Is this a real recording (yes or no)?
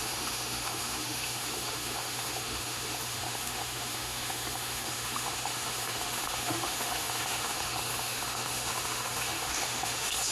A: no